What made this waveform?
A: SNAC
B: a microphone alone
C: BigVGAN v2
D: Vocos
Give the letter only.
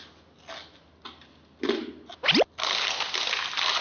B